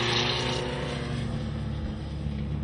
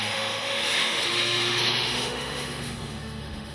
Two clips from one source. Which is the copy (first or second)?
second